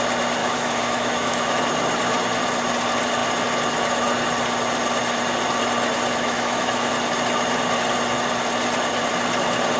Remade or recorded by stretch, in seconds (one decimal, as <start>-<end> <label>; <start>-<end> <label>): 0.0-0.4 recorded; 0.4-1.6 remade; 1.6-6.1 recorded; 6.1-6.9 remade; 6.9-9.8 recorded